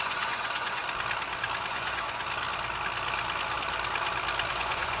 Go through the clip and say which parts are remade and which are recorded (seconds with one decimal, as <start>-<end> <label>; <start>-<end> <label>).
0.0-0.8 remade; 0.8-1.7 recorded; 1.7-2.2 remade; 2.2-4.5 recorded; 4.5-5.0 remade

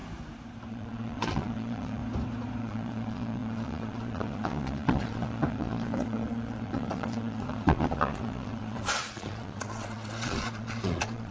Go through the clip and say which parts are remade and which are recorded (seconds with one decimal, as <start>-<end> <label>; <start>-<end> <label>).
0.0-0.7 recorded; 0.7-2.0 remade; 2.0-2.6 recorded; 2.6-11.3 remade

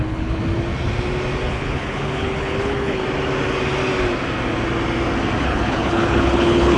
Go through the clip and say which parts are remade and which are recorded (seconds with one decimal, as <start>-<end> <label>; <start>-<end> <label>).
0.0-0.4 remade; 0.4-1.5 recorded; 1.5-3.0 remade; 3.0-5.4 recorded; 5.4-6.8 remade

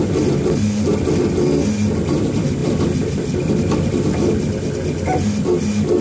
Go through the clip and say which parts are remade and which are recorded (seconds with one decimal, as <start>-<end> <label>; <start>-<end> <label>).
0.0-6.0 recorded